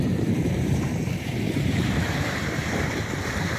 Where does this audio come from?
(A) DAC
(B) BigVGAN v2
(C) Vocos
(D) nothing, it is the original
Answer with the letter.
B